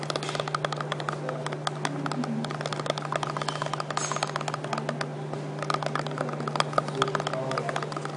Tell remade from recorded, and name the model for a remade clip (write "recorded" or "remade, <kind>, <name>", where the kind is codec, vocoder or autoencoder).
recorded